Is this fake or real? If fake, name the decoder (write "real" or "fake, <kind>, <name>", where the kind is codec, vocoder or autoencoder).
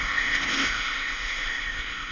fake, codec, ZipCodec